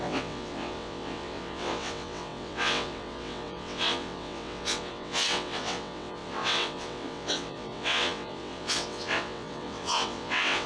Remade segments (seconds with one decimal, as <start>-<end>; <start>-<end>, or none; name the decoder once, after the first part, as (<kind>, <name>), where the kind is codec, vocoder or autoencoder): 0.0-10.7 (vocoder, WaveNeXt)